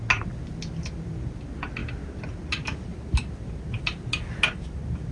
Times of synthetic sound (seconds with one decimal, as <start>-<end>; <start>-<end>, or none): none